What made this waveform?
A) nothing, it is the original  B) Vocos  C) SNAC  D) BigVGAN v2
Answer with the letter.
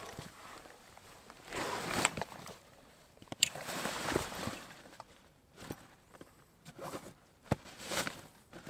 D